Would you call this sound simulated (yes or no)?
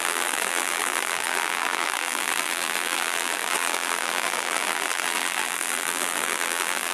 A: yes